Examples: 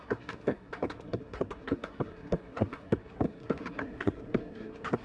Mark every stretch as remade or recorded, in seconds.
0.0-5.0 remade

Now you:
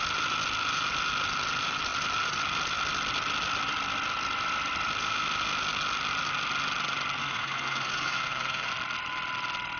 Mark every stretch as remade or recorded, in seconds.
0.0-7.2 recorded; 7.2-8.7 remade; 8.7-9.8 recorded

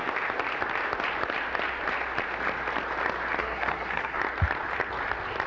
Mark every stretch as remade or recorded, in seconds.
0.0-3.4 recorded; 3.4-4.2 remade; 4.2-5.5 recorded

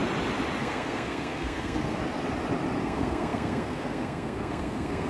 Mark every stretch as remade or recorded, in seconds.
0.0-0.6 recorded; 0.6-2.0 remade; 2.0-2.8 recorded; 2.8-5.1 remade

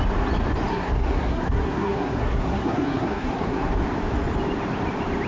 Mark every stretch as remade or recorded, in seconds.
0.0-0.7 recorded; 0.7-3.7 remade; 3.7-5.3 recorded

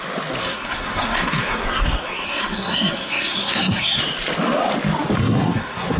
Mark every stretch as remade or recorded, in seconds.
0.0-0.4 recorded; 0.4-4.0 remade; 4.0-5.2 recorded; 5.2-6.0 remade

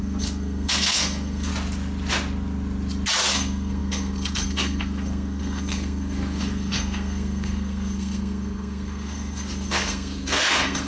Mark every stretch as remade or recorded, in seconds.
0.0-1.5 remade; 1.5-3.3 recorded; 3.3-10.9 remade

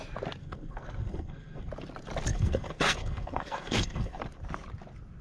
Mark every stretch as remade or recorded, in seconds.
0.0-0.4 recorded; 0.4-1.7 remade; 1.7-2.3 recorded; 2.3-4.2 remade; 4.2-5.2 recorded